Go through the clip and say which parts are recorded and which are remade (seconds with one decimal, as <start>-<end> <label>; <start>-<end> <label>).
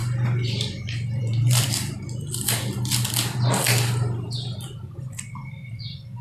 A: 0.0-6.2 recorded